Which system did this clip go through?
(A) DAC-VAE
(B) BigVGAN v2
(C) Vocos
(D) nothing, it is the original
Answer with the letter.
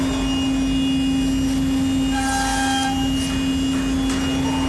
D